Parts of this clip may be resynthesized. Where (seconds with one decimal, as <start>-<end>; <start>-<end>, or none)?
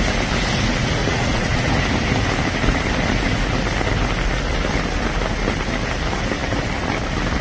1.0-1.7